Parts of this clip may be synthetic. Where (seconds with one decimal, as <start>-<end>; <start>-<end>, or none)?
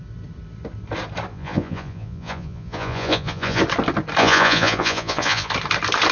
1.3-3.6; 4.2-5.5